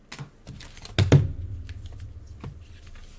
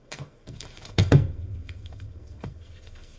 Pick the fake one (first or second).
second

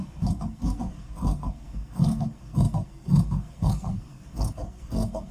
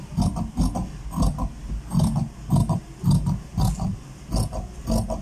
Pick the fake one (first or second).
first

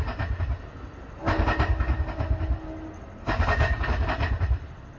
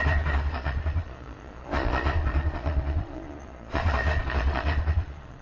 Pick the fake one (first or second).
second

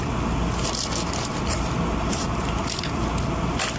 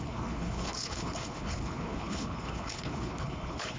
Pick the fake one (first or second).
second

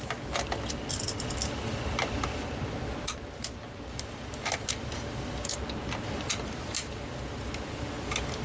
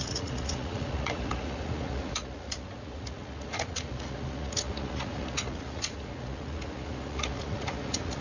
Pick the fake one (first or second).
second